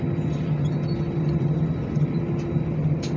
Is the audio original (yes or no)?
yes